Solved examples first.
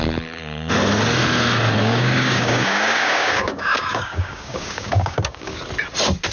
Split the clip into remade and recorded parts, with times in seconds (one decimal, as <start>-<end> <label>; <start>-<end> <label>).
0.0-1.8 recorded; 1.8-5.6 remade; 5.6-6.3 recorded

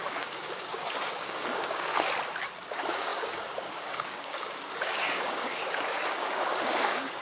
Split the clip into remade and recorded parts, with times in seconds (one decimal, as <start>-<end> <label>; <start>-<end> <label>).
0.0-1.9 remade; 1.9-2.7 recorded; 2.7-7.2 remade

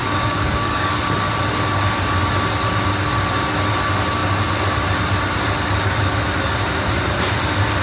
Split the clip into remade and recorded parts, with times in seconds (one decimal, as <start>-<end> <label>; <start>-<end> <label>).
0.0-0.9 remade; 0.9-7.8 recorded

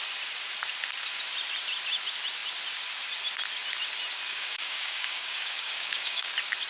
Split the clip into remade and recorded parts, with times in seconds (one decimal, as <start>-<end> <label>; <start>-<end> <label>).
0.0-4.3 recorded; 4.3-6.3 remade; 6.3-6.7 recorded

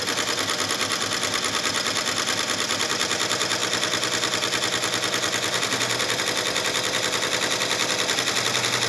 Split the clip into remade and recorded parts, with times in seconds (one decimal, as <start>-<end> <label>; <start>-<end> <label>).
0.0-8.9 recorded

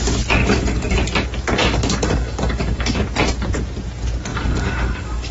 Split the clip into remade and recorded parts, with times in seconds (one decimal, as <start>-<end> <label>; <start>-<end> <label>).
0.0-0.4 recorded; 0.4-1.0 remade; 1.0-1.6 recorded; 1.6-3.0 remade; 3.0-4.3 recorded; 4.3-5.3 remade

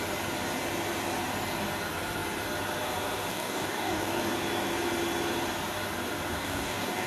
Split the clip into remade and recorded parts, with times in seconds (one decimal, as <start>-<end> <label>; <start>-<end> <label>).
0.0-3.3 recorded; 3.3-4.2 remade; 4.2-6.3 recorded; 6.3-7.1 remade

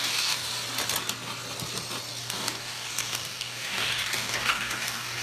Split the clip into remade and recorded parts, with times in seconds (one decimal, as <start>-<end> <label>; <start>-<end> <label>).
0.0-0.5 remade; 0.5-2.2 recorded; 2.2-5.2 remade